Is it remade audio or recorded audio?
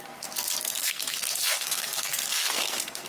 remade